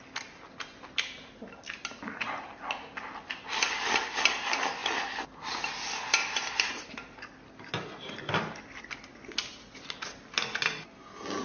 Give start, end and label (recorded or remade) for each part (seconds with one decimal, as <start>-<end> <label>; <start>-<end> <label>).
0.0-11.4 recorded